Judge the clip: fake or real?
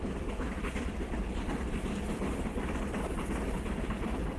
real